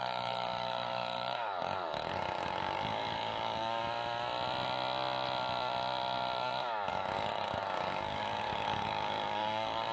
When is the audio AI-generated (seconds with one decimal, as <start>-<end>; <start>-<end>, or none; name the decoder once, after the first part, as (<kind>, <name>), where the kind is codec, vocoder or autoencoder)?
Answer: 0.0-3.8 (codec, DAC); 6.9-9.9